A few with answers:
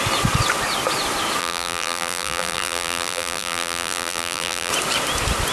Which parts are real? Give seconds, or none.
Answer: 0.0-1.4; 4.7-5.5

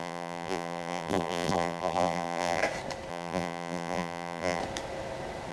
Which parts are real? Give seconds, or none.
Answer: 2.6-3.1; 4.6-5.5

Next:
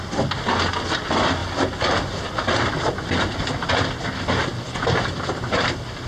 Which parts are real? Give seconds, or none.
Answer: 0.0-6.1

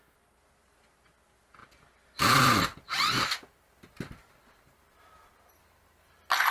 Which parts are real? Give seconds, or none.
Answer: 0.0-6.5

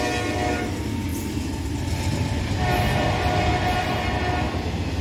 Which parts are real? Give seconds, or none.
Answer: 0.0-5.0